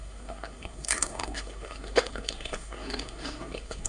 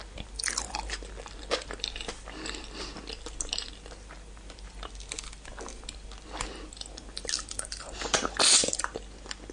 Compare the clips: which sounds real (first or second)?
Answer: second